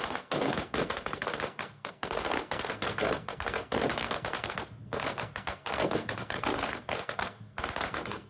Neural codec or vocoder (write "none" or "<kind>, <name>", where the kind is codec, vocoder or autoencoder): codec, SNAC